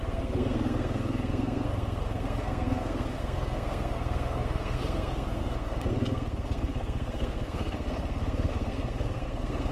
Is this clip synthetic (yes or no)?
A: yes